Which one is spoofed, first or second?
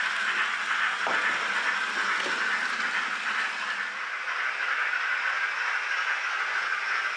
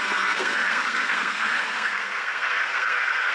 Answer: second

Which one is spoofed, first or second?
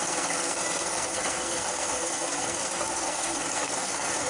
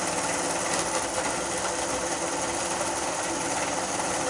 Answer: first